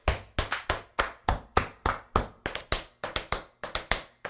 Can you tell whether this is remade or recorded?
recorded